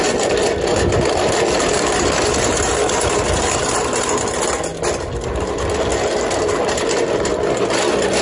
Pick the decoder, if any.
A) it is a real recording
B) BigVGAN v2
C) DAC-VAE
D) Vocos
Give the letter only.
A